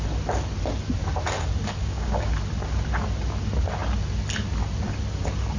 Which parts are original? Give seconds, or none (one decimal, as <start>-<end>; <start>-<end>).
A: 0.0-1.8; 2.3-5.6